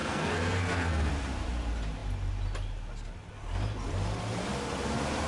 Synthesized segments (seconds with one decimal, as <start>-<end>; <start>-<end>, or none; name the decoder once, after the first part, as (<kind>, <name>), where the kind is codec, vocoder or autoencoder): 0.0-1.1 (codec, SNAC)